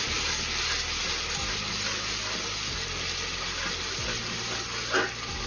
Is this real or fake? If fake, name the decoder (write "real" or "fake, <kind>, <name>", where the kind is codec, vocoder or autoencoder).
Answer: real